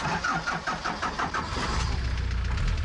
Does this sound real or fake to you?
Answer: fake